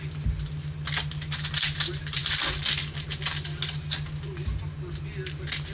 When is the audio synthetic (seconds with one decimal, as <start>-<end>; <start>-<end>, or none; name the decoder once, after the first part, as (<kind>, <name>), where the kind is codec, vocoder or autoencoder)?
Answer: none